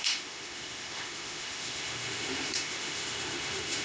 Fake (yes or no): yes